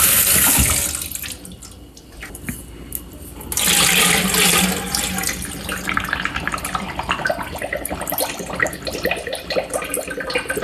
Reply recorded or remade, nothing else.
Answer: recorded